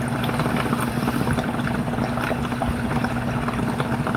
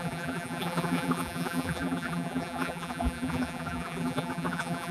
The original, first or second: first